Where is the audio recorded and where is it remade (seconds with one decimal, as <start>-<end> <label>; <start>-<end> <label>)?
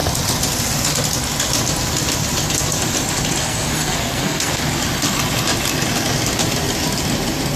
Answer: 0.0-3.4 recorded; 3.4-4.6 remade; 4.6-7.6 recorded